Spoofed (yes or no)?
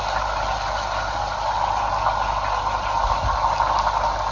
no